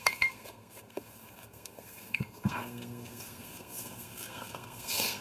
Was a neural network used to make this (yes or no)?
yes